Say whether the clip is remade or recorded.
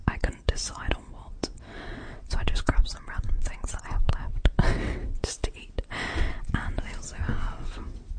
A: remade